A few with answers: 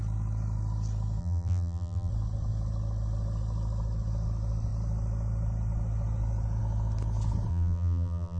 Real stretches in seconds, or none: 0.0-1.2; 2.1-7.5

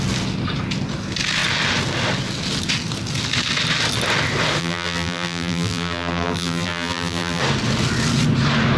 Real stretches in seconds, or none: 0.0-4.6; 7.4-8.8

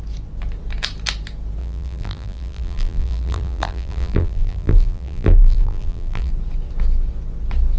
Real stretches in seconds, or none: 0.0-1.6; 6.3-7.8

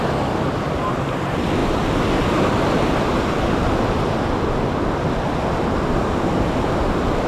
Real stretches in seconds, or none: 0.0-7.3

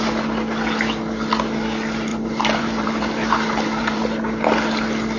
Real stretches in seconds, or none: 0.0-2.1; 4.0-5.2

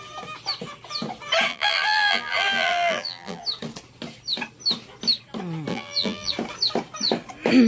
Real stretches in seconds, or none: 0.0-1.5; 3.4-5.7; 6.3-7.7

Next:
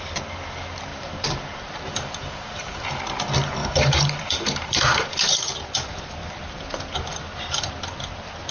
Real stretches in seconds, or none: 0.0-0.9; 3.0-3.6; 5.3-6.2; 7.7-8.5